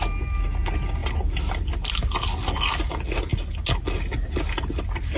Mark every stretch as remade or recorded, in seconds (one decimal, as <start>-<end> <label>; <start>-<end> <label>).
0.0-5.2 recorded

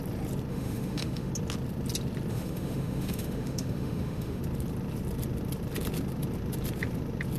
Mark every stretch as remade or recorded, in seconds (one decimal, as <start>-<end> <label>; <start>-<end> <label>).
0.0-0.5 recorded; 0.5-1.3 remade; 1.3-2.3 recorded; 2.3-4.4 remade; 4.4-7.4 recorded

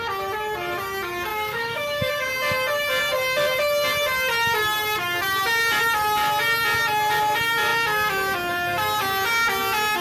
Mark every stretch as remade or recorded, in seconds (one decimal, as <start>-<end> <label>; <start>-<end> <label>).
0.0-1.3 recorded; 1.3-2.1 remade; 2.1-10.0 recorded

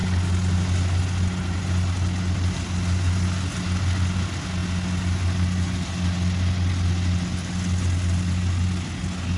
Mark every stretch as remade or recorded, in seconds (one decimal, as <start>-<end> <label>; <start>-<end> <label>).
0.0-9.4 recorded

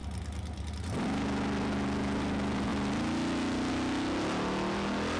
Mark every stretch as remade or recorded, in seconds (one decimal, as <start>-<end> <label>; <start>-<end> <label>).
0.0-5.2 recorded

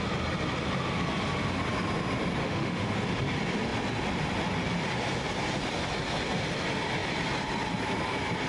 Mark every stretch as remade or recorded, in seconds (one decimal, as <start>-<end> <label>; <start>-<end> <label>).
0.0-2.4 recorded; 2.4-2.9 remade; 2.9-8.5 recorded

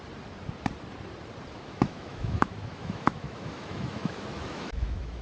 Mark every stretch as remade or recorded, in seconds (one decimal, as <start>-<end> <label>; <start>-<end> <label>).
0.0-1.5 recorded; 1.5-5.2 remade

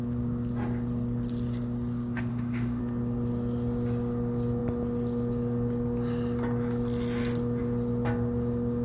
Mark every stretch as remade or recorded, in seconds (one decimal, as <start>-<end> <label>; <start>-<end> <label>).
0.0-2.3 recorded; 2.3-2.8 remade; 2.8-8.8 recorded